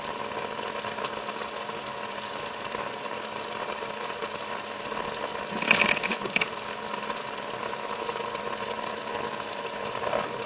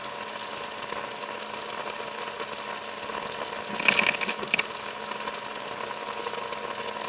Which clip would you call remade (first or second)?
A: first